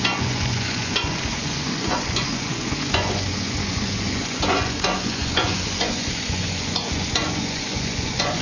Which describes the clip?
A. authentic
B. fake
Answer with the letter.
B